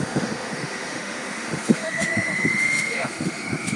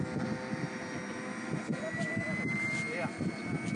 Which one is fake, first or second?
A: first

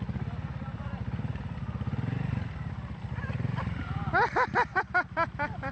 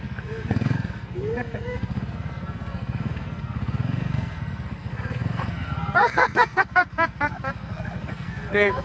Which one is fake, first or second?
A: second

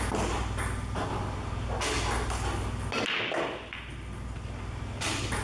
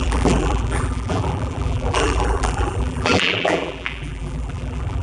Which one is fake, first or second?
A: second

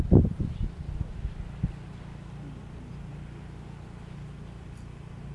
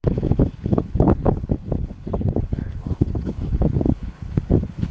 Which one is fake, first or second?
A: second